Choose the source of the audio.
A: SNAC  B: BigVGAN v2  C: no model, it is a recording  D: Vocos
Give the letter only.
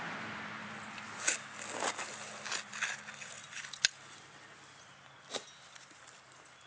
C